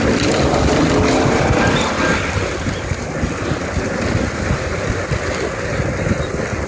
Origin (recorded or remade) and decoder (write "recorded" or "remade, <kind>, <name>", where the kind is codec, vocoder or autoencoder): recorded